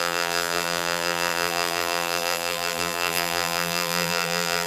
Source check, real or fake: fake